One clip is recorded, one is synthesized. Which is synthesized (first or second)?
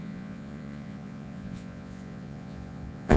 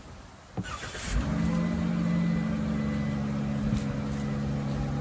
first